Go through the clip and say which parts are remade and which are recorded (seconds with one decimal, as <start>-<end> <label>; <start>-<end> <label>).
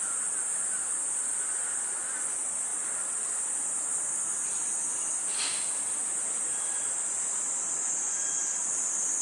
0.0-9.2 recorded